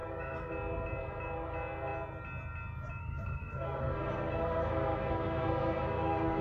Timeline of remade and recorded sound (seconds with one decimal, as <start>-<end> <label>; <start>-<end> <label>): 0.0-0.5 remade; 0.5-3.0 recorded; 3.0-6.4 remade